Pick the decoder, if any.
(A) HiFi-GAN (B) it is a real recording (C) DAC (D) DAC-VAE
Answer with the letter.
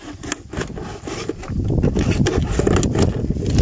B